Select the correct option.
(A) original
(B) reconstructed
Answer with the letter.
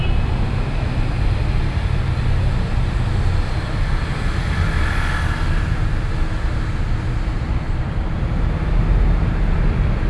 A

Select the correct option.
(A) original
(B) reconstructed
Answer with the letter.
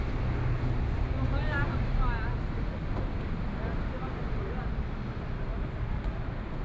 A